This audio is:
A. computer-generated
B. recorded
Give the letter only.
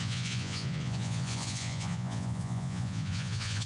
A